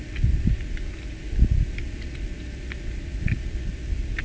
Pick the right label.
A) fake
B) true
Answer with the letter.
B